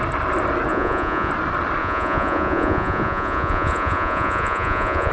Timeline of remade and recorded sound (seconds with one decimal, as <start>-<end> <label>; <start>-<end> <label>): 0.0-0.7 recorded; 0.7-1.3 remade; 1.3-1.8 recorded; 1.8-5.1 remade